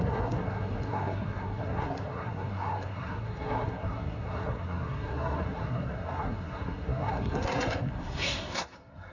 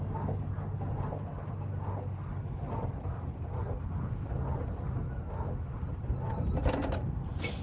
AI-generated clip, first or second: first